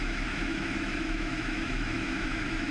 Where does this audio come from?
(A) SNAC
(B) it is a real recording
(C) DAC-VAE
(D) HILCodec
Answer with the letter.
C